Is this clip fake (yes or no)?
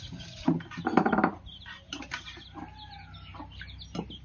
no